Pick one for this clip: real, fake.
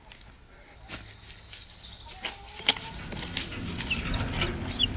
real